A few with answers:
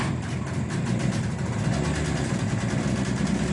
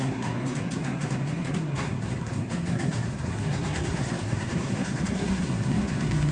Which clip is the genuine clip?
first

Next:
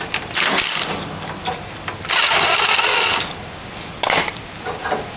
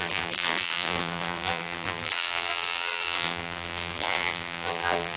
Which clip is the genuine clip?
first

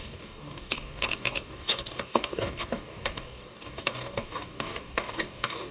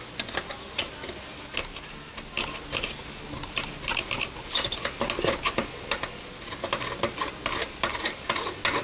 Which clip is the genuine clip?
second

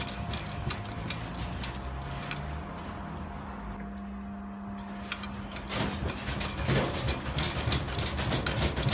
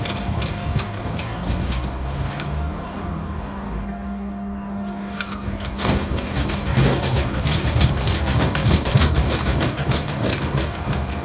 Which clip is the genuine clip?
first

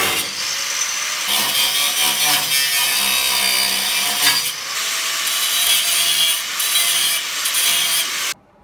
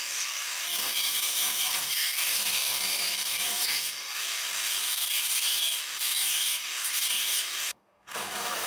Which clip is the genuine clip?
first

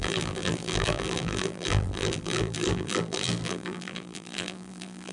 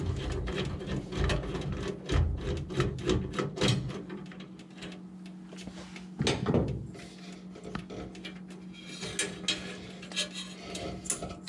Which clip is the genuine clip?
second